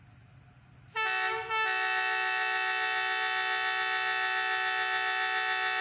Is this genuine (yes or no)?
yes